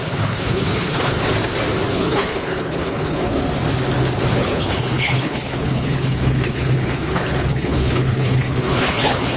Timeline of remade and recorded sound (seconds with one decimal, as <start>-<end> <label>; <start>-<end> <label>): 0.0-1.2 remade; 1.2-1.9 recorded; 1.9-3.4 remade; 3.4-4.3 recorded; 4.3-9.4 remade